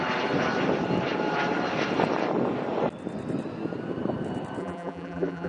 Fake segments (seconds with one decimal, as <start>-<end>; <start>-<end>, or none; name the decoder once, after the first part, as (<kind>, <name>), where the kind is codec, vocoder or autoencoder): 4.6-5.5 (vocoder, BigVGAN v2)